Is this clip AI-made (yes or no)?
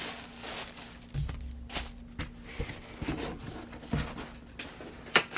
no